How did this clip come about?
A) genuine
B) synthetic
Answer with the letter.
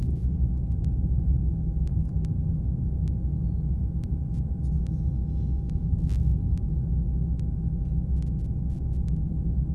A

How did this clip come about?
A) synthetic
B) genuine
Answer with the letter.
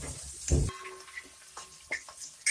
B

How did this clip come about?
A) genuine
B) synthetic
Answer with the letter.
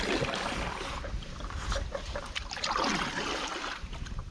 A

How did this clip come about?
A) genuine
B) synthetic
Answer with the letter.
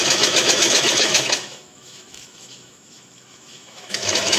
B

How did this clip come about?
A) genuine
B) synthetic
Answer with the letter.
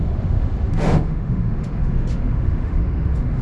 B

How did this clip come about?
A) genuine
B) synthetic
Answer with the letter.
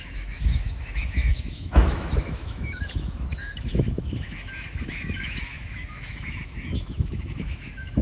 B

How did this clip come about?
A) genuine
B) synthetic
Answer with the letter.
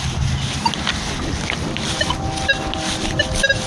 A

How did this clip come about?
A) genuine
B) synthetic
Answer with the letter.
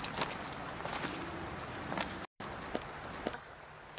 A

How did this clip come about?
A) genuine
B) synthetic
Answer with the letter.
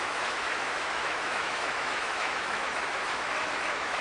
B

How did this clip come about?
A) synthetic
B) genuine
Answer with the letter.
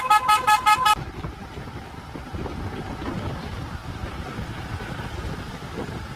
B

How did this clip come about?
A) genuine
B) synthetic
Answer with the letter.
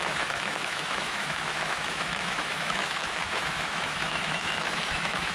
B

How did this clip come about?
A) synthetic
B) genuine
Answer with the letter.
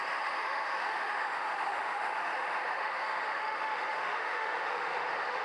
A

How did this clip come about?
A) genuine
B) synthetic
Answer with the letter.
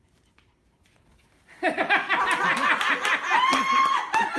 A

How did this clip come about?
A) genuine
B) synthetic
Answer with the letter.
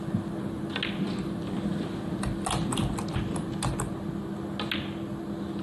A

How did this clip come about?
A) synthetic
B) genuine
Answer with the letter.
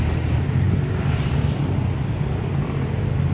B